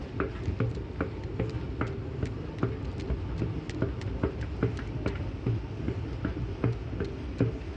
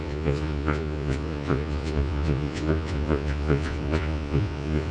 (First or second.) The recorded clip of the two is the first